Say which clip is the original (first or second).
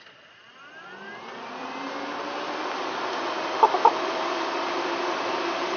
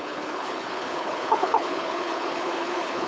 first